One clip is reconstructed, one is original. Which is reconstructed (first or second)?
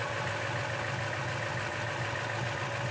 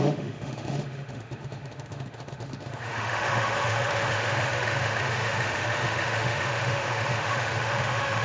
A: second